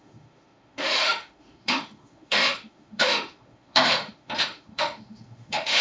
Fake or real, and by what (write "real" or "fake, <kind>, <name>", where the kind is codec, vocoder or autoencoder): fake, autoencoder, DAC-VAE